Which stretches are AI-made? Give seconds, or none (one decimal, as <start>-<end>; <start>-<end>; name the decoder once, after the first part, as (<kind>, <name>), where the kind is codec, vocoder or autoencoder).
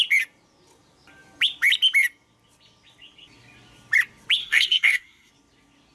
4.4-5.3 (codec, SNAC)